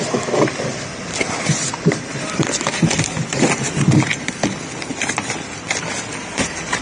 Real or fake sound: fake